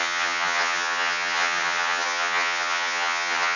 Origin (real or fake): fake